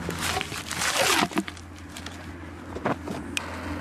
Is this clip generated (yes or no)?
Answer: no